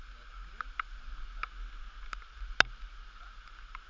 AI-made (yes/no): no